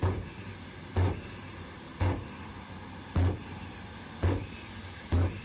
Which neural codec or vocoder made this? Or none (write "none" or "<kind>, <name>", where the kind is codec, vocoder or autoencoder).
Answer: none